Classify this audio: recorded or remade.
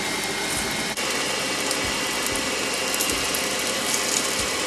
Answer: recorded